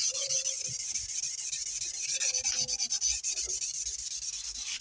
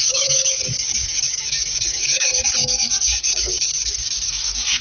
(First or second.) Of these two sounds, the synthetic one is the second